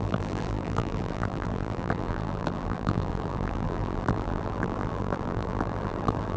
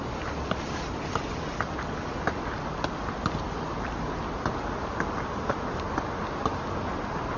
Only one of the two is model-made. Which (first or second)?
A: first